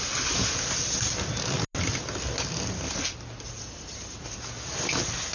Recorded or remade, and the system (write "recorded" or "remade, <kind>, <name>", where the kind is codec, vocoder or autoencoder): recorded